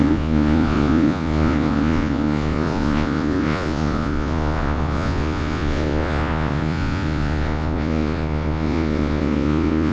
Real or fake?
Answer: fake